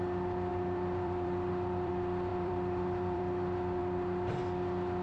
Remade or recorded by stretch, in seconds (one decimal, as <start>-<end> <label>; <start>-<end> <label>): 0.0-0.5 recorded; 0.5-1.9 remade; 1.9-2.3 recorded; 2.3-3.2 remade; 3.2-5.0 recorded